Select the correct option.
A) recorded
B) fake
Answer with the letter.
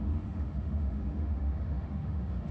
B